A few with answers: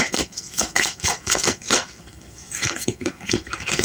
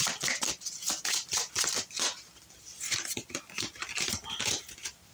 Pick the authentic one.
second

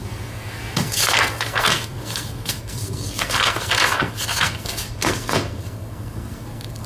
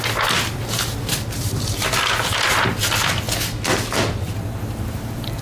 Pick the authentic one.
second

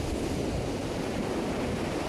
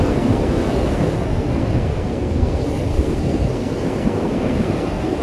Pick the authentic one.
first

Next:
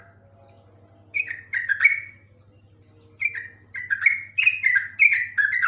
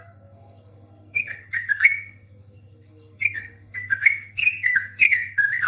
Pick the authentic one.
first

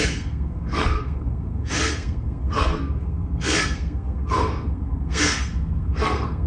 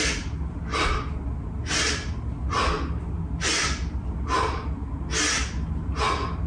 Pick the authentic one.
second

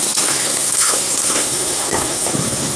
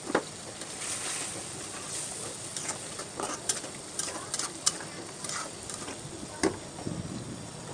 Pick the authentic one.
second